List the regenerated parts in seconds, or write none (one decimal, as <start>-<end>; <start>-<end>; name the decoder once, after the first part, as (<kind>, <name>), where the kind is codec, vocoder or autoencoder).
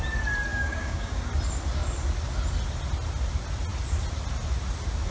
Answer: 0.5-1.2 (codec, DAC)